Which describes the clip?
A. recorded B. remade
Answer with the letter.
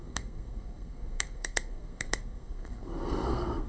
B